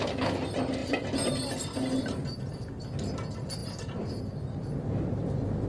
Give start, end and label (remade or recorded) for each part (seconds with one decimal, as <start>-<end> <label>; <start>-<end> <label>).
0.0-0.8 recorded; 0.8-1.3 remade; 1.3-5.7 recorded